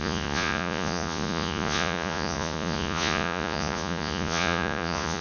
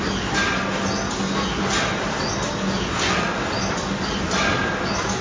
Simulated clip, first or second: first